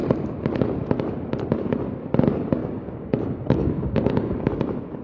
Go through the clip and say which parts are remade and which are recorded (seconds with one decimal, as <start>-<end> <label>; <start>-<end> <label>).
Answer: 0.0-2.6 recorded; 2.6-4.5 remade; 4.5-5.0 recorded